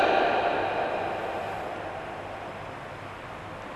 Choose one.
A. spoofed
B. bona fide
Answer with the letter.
B